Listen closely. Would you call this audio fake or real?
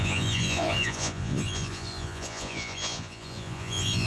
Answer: fake